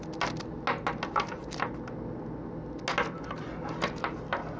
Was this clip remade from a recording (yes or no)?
no